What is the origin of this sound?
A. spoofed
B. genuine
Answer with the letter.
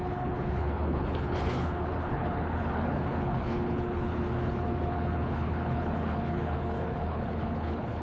A